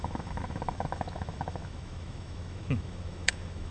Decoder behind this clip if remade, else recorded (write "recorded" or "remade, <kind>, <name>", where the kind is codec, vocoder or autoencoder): remade, autoencoder, DAC-VAE